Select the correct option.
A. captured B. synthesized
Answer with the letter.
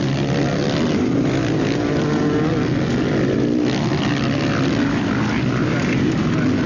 A